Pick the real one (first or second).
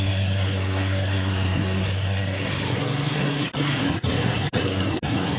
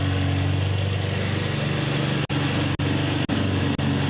second